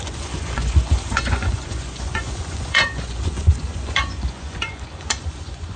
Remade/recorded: remade